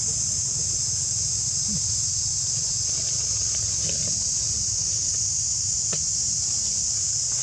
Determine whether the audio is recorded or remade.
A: recorded